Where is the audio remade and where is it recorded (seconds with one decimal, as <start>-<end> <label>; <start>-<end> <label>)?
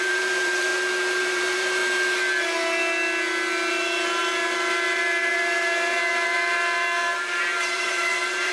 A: 0.0-0.7 remade; 0.7-1.2 recorded; 1.2-1.8 remade; 1.8-3.7 recorded; 3.7-8.5 remade